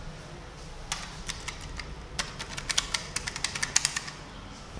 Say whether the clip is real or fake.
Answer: real